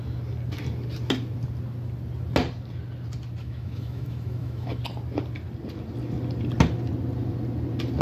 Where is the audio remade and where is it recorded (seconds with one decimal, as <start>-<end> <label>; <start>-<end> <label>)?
0.0-3.4 recorded; 3.4-4.8 remade; 4.8-8.0 recorded